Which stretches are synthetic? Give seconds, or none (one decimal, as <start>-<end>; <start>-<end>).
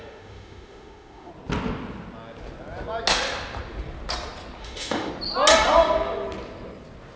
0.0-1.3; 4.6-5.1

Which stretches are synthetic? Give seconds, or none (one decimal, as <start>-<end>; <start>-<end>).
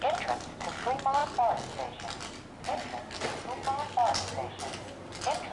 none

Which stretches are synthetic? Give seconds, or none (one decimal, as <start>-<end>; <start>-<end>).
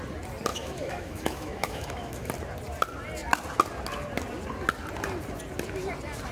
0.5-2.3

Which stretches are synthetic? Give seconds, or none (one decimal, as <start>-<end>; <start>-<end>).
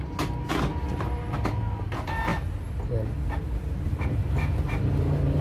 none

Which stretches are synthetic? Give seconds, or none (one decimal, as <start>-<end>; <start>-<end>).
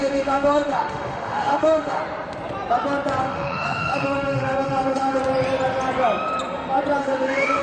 0.0-2.0; 3.2-5.2; 7.0-7.6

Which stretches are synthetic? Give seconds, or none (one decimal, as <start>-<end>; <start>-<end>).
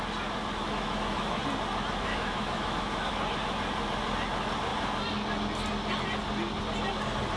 0.6-1.4; 2.1-3.1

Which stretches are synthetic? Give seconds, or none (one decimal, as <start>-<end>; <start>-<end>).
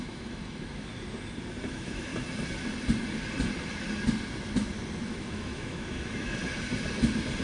0.0-0.9; 1.6-2.1; 5.1-6.4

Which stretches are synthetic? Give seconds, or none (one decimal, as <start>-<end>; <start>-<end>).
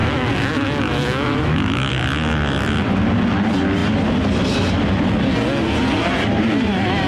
0.0-1.9